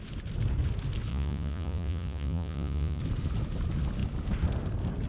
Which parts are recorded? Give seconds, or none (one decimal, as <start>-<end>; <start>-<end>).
0.0-1.1; 3.0-5.1